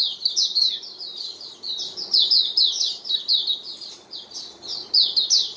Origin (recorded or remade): recorded